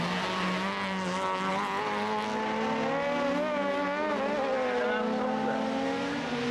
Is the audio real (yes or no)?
yes